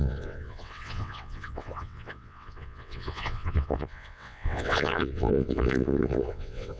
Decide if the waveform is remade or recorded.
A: remade